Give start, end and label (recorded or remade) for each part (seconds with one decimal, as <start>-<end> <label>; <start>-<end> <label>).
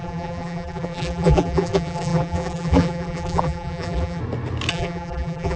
0.0-4.2 remade; 4.2-4.7 recorded; 4.7-5.6 remade